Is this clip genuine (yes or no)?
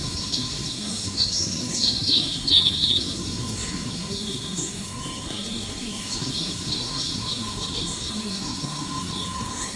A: no